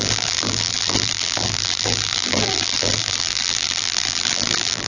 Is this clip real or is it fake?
fake